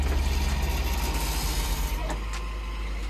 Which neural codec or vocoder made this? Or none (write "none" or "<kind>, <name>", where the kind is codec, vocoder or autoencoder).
none